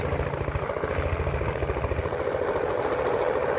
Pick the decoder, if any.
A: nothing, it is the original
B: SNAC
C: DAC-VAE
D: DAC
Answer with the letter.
A